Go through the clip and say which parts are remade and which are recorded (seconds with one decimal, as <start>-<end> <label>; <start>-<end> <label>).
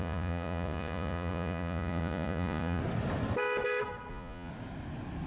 0.0-2.8 remade; 2.8-4.1 recorded; 4.1-4.5 remade; 4.5-5.3 recorded